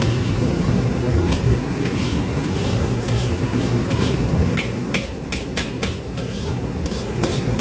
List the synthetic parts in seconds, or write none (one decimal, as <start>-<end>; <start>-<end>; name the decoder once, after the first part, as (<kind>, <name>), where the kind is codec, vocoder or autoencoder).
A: 0.0-7.6 (codec, SNAC)